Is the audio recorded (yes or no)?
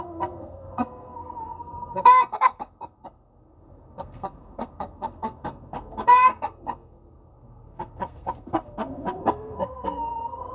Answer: no